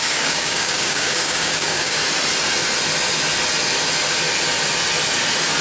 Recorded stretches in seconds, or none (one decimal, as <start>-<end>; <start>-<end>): 2.0-5.6